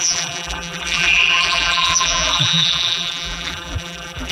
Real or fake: fake